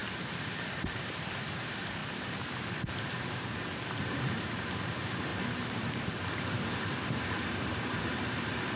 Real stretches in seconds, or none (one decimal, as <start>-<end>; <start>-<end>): 0.0-0.9